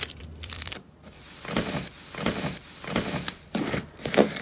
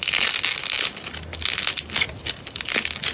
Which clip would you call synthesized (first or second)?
first